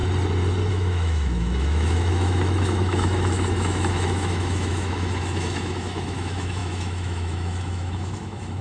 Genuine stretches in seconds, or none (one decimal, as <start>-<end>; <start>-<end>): 0.0-0.7